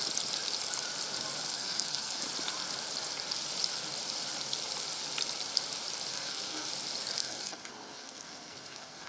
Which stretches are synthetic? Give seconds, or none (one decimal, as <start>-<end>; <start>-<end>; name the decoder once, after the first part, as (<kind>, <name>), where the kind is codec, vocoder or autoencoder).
1.5-2.2 (codec, SNAC); 6.1-6.7; 7.2-9.1